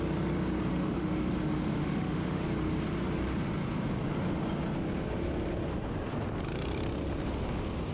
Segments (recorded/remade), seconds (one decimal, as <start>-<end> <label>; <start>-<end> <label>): 0.0-0.7 recorded; 0.7-2.4 remade; 2.4-7.9 recorded